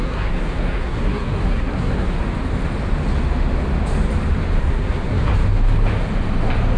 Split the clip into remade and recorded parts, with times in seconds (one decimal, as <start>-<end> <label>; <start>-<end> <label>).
0.0-2.2 remade; 2.2-4.6 recorded; 4.6-5.3 remade; 5.3-6.8 recorded